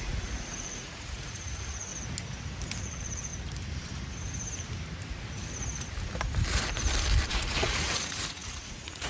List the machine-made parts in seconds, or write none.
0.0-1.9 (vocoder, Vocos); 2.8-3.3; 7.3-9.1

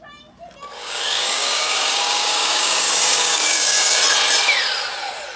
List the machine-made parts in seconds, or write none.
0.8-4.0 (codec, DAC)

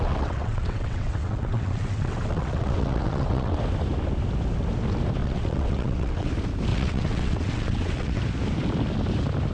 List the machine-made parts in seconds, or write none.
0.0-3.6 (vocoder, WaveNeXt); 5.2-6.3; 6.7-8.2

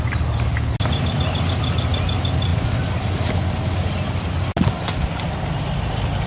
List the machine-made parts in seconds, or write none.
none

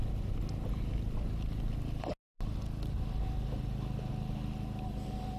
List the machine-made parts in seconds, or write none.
none

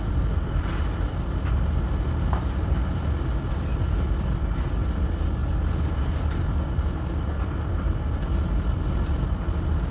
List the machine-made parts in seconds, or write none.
0.0-9.9 (vocoder, BigVGAN v2)

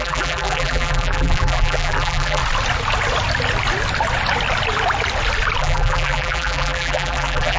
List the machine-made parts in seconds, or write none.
0.0-2.4 (vocoder, BigVGAN v2); 5.6-7.6